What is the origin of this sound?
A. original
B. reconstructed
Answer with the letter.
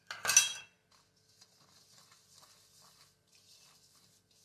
A